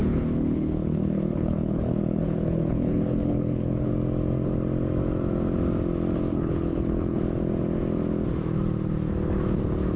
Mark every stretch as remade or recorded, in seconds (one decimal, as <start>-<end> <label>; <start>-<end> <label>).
0.0-3.9 remade; 3.9-6.3 recorded; 6.3-7.2 remade; 7.2-10.0 recorded